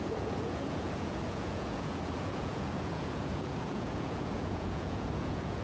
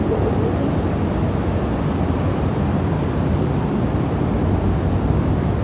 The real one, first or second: second